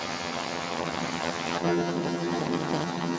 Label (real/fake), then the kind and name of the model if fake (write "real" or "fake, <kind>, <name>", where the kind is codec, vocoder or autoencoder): fake, vocoder, HiFi-GAN